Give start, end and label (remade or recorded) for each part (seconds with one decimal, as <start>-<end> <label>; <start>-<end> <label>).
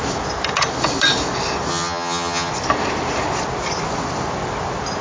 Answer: 0.0-1.7 recorded; 1.7-2.5 remade; 2.5-5.0 recorded